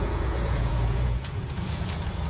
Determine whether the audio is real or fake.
fake